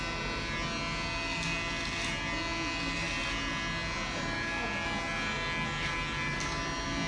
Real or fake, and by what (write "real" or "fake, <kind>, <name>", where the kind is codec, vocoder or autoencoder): real